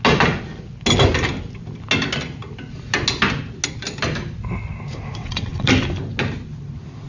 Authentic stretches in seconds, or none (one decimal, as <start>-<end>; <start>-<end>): 0.0-5.2; 5.7-7.1